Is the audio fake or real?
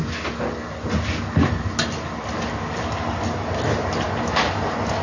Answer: real